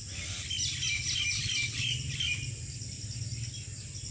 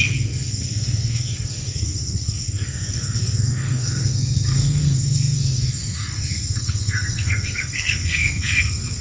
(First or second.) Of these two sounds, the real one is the first